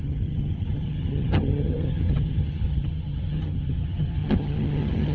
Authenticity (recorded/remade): remade